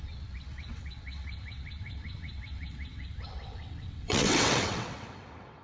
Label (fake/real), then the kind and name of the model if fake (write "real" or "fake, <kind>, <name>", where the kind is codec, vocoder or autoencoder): fake, vocoder, WaveNeXt